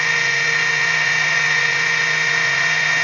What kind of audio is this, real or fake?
fake